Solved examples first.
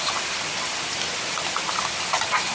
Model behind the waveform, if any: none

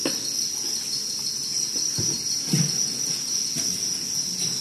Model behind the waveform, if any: none